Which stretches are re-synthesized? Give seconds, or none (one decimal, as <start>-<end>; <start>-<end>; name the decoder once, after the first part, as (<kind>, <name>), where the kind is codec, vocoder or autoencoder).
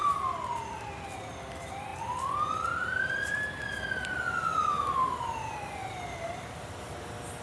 none